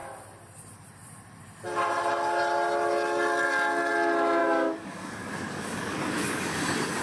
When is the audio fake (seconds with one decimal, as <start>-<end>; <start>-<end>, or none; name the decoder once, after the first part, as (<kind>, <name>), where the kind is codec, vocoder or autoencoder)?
4.4-6.6 (codec, DAC)